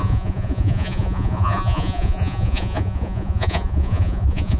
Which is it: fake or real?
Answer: fake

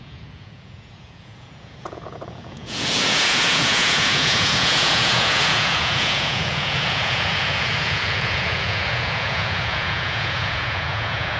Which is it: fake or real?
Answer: fake